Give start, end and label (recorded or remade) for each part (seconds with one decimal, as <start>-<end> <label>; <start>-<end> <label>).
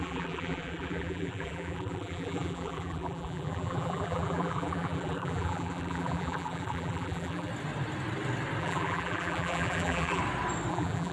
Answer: 0.0-7.5 remade; 7.5-8.6 recorded; 8.6-10.2 remade; 10.2-10.7 recorded; 10.7-11.1 remade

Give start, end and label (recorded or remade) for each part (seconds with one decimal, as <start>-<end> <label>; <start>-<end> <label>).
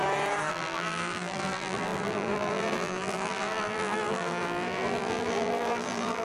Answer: 0.0-0.5 recorded; 0.5-6.2 remade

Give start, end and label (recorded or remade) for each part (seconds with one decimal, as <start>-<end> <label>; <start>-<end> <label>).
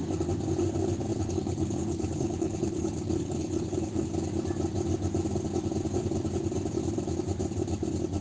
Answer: 0.0-1.1 recorded; 1.1-4.1 remade; 4.1-8.2 recorded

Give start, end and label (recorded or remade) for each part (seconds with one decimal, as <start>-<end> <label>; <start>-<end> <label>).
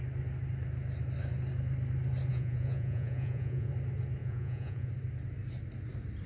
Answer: 0.0-2.3 recorded; 2.3-3.7 remade; 3.7-4.2 recorded; 4.2-4.9 remade; 4.9-6.3 recorded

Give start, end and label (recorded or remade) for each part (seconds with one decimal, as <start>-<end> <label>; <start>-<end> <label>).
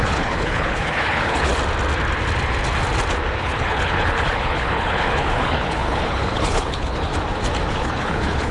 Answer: 0.0-1.5 remade; 1.5-3.4 recorded; 3.4-7.1 remade; 7.1-7.7 recorded; 7.7-8.5 remade